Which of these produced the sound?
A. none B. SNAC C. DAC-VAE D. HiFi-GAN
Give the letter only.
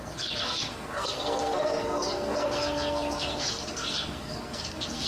B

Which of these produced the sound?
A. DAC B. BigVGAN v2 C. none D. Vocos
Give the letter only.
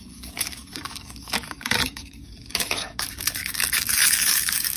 A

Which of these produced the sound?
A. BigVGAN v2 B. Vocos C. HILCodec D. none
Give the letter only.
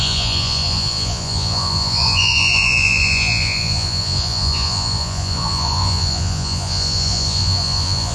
B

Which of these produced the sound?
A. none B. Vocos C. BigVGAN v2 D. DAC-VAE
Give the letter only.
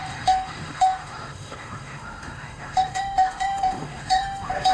D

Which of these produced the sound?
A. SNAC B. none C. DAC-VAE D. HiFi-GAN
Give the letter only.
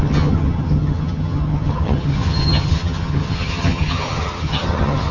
D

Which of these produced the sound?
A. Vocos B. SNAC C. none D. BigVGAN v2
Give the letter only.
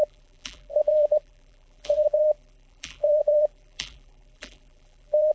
D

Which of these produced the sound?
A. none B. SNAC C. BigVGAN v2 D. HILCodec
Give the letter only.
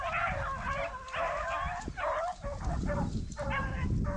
A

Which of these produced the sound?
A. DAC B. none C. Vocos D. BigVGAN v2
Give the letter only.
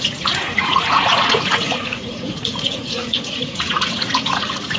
C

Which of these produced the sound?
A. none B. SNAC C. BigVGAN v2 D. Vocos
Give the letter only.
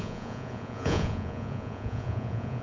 D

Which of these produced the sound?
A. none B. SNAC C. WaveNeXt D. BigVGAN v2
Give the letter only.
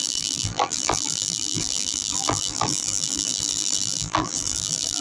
D